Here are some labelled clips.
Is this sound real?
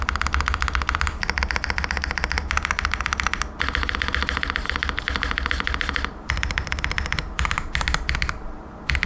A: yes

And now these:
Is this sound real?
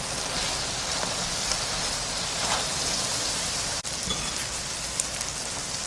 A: yes